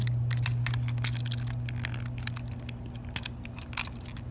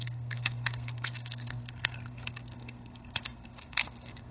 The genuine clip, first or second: first